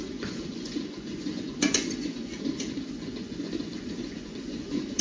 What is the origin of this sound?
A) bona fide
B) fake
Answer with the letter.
B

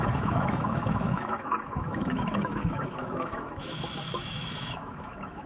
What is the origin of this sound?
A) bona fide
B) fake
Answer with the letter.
B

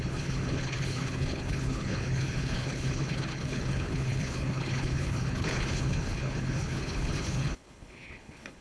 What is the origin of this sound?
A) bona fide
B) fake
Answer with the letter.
B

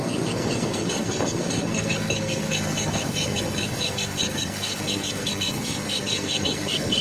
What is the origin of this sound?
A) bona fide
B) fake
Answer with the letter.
B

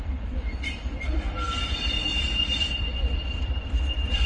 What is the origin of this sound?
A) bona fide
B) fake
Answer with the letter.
B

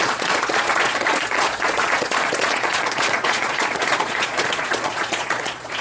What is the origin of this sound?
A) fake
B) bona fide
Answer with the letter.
A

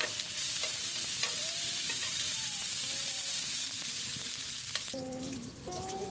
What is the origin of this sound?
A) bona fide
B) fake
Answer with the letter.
B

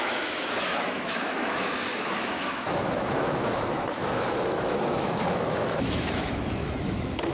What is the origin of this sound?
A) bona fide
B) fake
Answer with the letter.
B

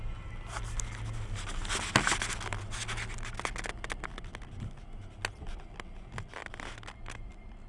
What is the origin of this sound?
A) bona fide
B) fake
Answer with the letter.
A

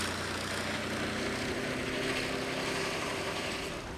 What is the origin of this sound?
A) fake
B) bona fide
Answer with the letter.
B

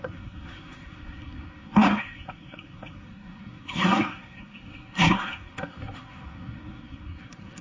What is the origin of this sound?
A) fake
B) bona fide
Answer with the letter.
A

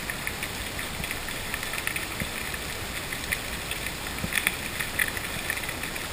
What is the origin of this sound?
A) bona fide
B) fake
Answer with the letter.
A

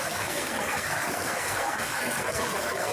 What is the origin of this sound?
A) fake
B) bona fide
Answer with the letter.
A